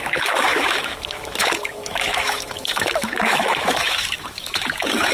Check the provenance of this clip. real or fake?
fake